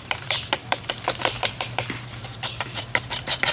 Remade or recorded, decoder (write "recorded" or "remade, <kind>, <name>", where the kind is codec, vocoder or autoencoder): remade, vocoder, BigVGAN v2